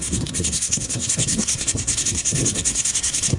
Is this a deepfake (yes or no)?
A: yes